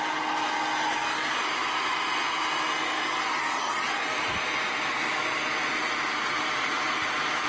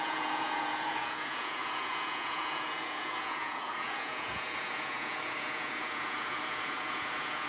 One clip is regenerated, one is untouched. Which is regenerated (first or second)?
second